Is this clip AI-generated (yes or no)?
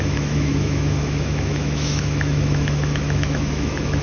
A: yes